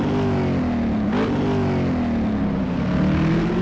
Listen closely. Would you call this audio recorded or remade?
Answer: recorded